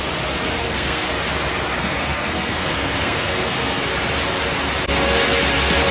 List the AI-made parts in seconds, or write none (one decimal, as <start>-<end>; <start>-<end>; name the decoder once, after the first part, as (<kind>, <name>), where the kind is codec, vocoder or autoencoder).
0.6-1.1 (codec, SNAC); 1.8-3.8